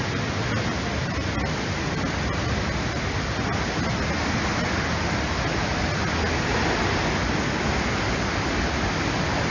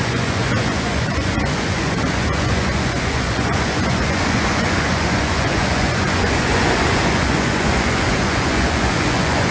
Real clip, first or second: first